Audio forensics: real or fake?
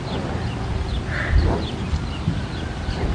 real